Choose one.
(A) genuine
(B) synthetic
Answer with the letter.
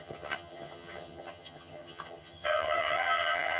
B